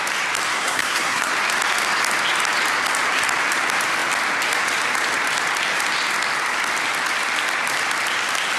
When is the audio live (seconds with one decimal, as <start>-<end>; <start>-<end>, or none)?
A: 0.0-0.5; 1.3-8.6